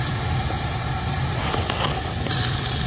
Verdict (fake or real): real